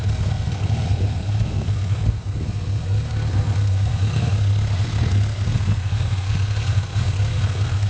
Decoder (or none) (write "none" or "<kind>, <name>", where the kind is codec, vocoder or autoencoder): codec, SNAC